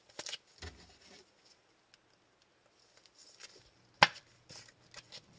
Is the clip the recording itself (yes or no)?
yes